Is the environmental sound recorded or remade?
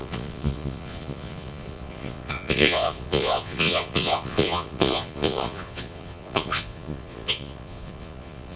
remade